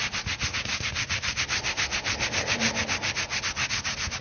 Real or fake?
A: real